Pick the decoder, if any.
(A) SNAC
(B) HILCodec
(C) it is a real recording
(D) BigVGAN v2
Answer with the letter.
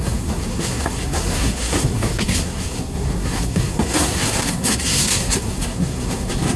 A